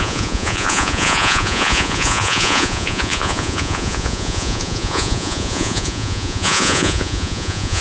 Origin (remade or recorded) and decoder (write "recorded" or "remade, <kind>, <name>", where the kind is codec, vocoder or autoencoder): remade, vocoder, Vocos